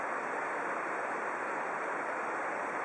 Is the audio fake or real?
fake